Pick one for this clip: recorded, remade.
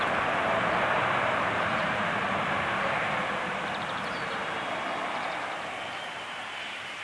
remade